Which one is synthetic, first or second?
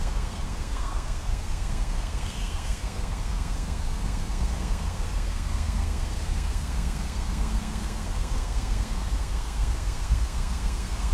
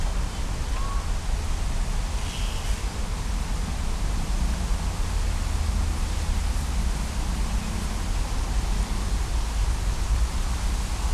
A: first